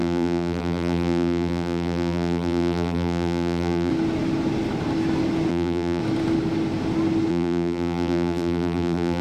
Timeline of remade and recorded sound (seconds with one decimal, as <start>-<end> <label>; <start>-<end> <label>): 0.0-3.9 remade; 3.9-5.5 recorded; 5.5-6.0 remade; 6.0-7.3 recorded; 7.3-9.2 remade